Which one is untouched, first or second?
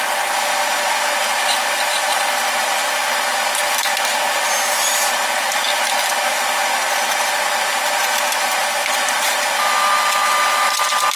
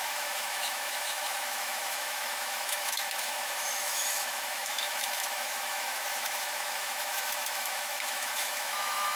first